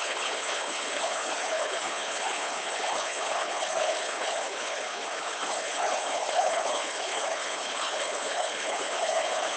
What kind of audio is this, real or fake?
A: fake